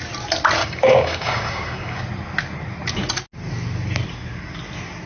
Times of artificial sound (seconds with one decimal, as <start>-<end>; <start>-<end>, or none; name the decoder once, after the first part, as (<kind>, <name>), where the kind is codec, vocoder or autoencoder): 0.6-2.0 (codec, DAC)